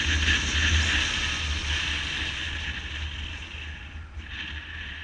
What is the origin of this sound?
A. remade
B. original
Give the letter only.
B